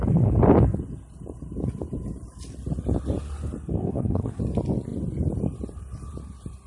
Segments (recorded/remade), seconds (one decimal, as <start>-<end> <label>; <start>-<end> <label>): 0.0-3.8 recorded; 3.8-4.4 remade; 4.4-6.7 recorded